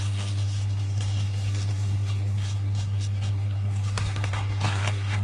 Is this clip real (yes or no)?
no